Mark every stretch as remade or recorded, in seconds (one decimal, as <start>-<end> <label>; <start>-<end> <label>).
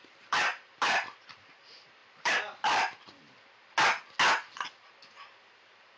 0.0-1.5 remade; 1.5-2.0 recorded; 2.0-3.5 remade; 3.5-6.0 recorded